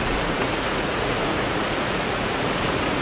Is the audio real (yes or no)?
no